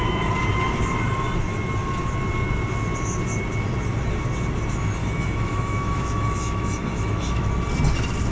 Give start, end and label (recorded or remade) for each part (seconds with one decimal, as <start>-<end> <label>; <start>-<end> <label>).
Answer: 0.0-5.0 recorded; 5.0-7.5 remade; 7.5-8.3 recorded